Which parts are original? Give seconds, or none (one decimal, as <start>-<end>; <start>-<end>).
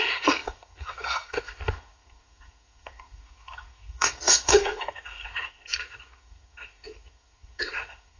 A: none